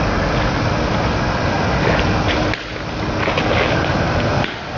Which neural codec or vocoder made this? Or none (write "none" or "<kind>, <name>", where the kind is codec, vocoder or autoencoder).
none